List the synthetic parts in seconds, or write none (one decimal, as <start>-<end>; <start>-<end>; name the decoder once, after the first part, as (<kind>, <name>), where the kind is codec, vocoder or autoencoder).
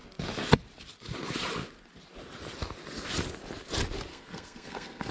4.1-5.1 (codec, SNAC)